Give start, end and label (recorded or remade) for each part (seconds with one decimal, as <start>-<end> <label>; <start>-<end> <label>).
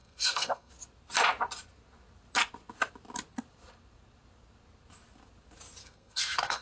0.0-0.7 remade; 0.7-5.8 recorded; 5.8-6.6 remade